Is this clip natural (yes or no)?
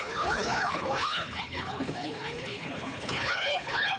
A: no